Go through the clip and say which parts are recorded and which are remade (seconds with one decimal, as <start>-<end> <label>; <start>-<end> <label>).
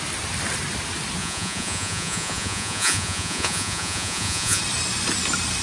0.0-1.2 recorded; 1.2-4.6 remade; 4.6-5.6 recorded